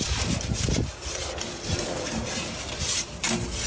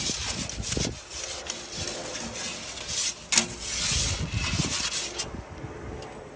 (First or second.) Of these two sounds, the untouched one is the second